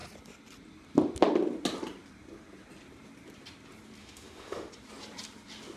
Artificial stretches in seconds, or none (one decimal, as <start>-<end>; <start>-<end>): 4.0-4.7